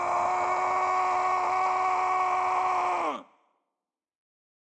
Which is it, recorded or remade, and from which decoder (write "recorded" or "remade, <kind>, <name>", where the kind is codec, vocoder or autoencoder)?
recorded